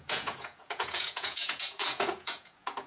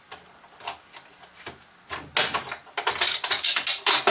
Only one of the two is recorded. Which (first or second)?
second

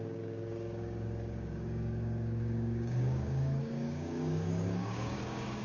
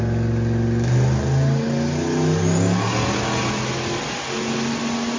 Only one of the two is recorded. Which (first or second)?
second